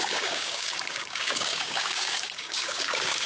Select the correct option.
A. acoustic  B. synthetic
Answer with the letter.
B